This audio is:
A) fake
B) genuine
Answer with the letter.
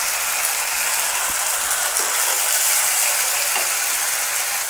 B